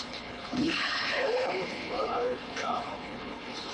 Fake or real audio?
fake